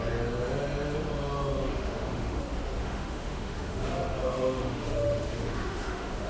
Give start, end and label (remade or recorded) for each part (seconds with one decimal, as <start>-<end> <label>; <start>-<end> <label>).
0.0-1.7 recorded; 1.7-2.4 remade; 2.4-2.8 recorded; 2.8-6.3 remade